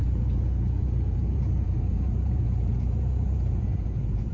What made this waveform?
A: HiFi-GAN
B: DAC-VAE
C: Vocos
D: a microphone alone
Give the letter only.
C